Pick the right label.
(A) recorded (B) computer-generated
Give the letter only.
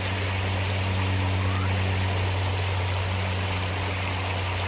A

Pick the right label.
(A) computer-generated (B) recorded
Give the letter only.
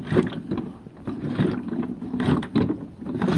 B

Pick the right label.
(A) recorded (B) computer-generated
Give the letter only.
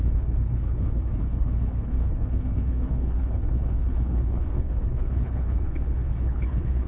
B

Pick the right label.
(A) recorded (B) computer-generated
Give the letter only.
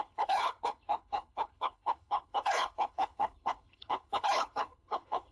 B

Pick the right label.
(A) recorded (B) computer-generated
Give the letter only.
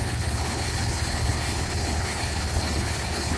B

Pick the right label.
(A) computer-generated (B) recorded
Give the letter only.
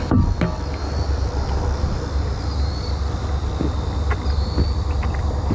B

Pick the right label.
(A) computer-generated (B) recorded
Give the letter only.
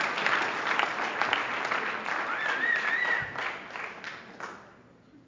B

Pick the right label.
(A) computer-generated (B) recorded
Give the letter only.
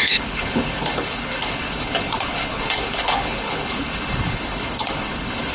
A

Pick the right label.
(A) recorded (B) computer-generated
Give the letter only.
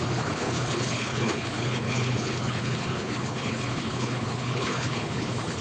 B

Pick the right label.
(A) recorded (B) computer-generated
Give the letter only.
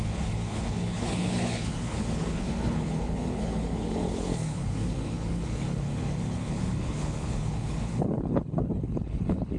B